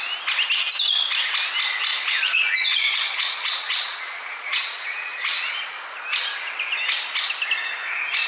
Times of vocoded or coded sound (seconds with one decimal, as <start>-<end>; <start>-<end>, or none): 1.9-5.8